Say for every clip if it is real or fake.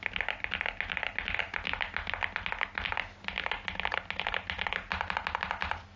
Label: real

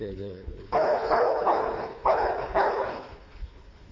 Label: fake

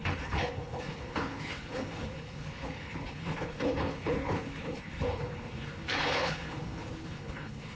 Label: fake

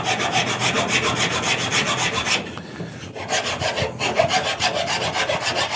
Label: real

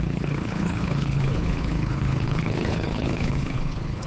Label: fake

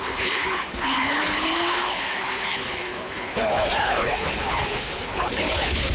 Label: fake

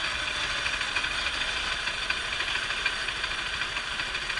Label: real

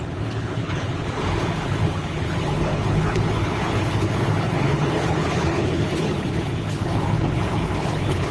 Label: fake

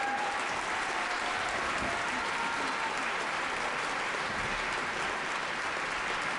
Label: real